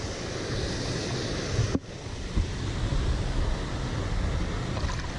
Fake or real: real